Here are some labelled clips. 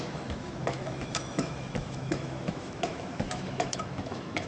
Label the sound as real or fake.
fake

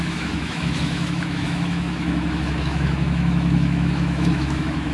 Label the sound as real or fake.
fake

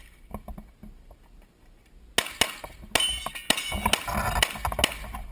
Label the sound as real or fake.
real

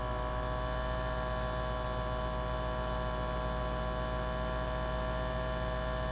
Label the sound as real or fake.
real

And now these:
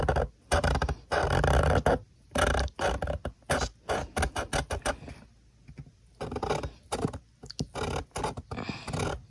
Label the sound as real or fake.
real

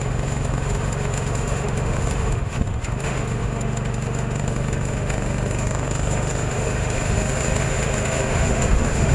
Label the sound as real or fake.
fake